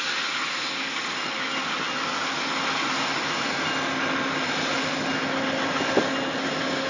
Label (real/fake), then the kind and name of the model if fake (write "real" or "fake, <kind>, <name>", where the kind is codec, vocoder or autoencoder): real